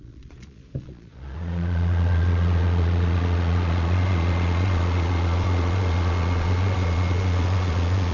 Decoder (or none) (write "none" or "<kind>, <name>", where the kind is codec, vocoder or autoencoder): vocoder, Vocos